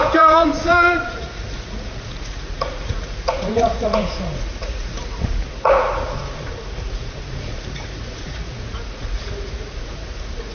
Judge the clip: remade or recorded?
remade